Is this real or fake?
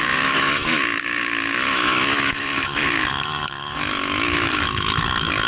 fake